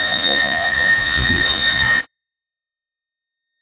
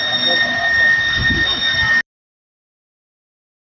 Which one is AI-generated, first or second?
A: first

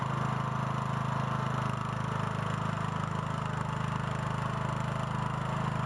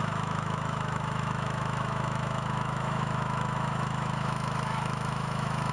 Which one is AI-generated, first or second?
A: second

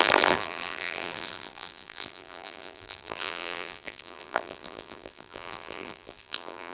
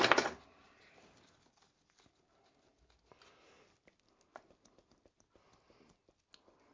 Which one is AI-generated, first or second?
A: first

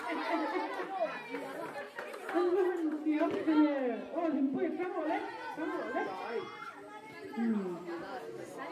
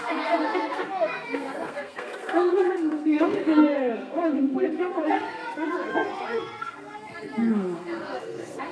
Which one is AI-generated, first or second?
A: second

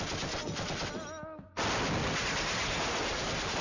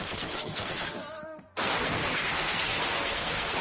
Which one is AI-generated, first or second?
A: second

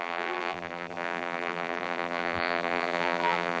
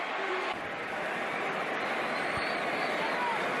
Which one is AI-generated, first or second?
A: first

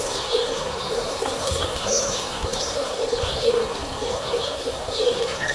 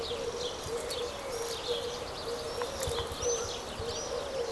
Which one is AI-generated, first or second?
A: first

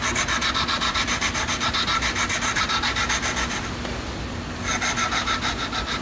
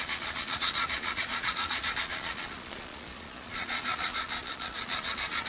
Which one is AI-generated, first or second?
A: second